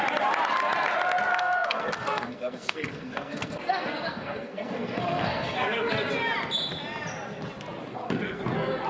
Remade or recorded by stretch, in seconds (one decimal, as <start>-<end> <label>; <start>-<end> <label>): 0.0-1.3 recorded; 1.3-5.9 remade; 5.9-7.9 recorded; 7.9-8.4 remade; 8.4-8.9 recorded